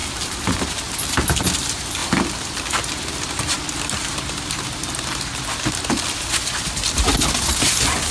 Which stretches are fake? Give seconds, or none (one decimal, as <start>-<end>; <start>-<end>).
none